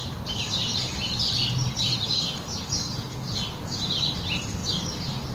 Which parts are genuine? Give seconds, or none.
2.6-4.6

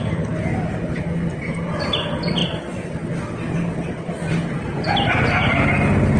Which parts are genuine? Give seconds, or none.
0.0-0.5; 1.0-6.2

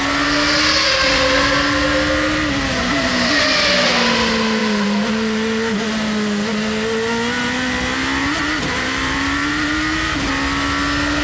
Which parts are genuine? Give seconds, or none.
0.0-4.6; 5.7-8.2; 10.3-11.2

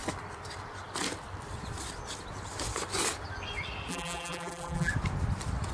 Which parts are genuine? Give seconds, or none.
0.0-3.9; 4.9-5.7

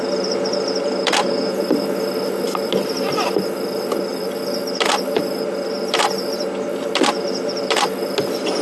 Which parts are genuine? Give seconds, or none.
0.0-4.1; 4.6-8.6

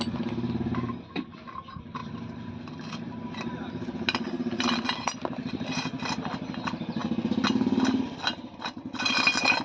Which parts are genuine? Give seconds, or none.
0.0-2.0; 2.7-9.6

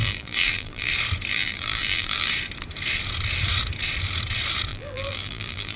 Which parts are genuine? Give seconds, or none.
0.9-1.3; 2.3-4.7

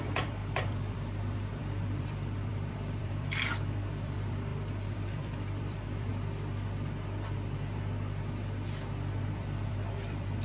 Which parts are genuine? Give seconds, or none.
6.1-9.3